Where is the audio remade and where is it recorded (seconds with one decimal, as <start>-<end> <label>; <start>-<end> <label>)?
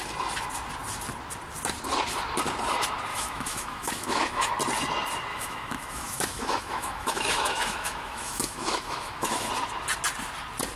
0.0-3.1 recorded; 3.1-4.5 remade; 4.5-5.3 recorded; 5.3-9.5 remade; 9.5-10.8 recorded